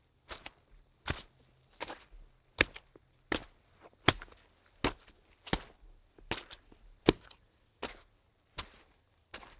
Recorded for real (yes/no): yes